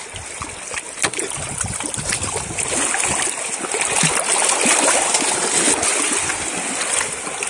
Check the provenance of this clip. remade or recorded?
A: recorded